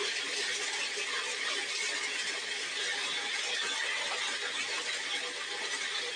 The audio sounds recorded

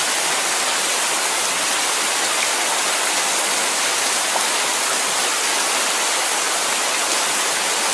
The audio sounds recorded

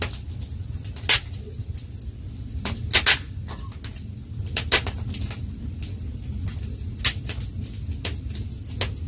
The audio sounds recorded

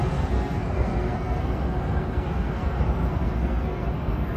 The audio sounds remade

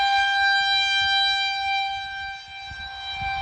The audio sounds recorded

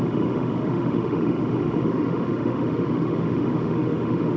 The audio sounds remade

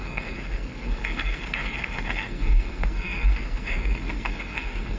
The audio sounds remade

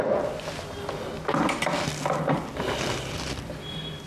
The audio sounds recorded